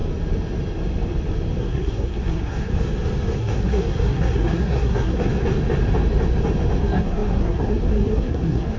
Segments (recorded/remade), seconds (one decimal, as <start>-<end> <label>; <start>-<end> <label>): 0.0-1.6 recorded; 1.6-2.7 remade; 2.7-3.4 recorded; 3.4-5.3 remade; 5.3-6.8 recorded; 6.8-8.8 remade